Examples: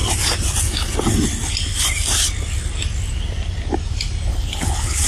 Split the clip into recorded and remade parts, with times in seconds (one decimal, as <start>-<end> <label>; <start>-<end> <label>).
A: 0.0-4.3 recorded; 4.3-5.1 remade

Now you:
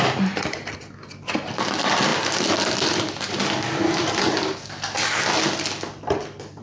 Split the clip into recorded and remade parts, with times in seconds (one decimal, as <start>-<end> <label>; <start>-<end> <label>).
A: 0.0-6.6 recorded

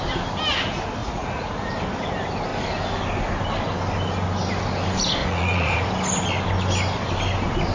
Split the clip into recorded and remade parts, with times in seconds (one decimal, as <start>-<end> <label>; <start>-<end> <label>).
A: 0.0-1.0 recorded; 1.0-1.7 remade; 1.7-5.2 recorded; 5.2-5.9 remade; 5.9-7.7 recorded

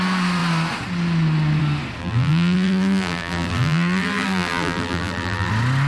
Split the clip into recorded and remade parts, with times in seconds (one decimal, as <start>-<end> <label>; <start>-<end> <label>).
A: 0.0-2.0 recorded; 2.0-5.5 remade; 5.5-5.9 recorded